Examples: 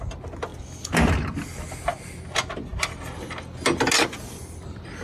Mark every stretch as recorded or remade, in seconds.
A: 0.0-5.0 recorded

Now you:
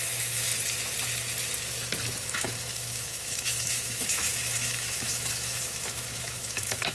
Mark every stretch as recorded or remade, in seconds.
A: 0.0-0.5 remade; 0.5-2.2 recorded; 2.2-6.9 remade

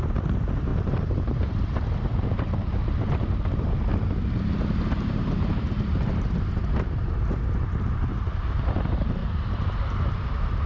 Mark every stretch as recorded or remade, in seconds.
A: 0.0-10.7 remade